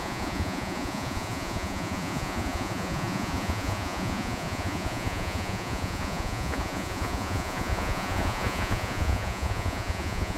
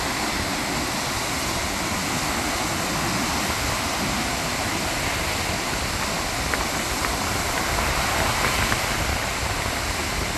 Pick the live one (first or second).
second